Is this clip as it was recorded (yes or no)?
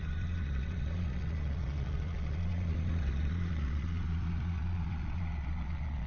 no